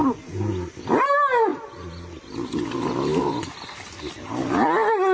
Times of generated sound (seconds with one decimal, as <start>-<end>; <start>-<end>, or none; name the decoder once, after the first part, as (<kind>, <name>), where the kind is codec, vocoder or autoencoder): none